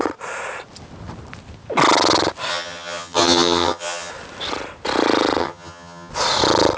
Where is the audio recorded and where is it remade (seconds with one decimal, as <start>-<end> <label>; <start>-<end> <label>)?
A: 0.0-2.5 recorded; 2.5-4.1 remade; 4.1-5.4 recorded; 5.4-6.1 remade; 6.1-6.8 recorded